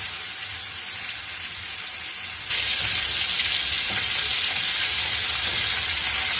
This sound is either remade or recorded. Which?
recorded